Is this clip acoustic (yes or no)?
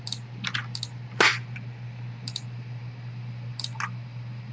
yes